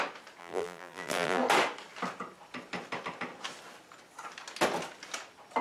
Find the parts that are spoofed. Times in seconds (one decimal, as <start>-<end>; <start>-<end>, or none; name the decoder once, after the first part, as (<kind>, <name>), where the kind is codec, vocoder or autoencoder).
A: 0.4-1.4 (vocoder, BigVGAN v2)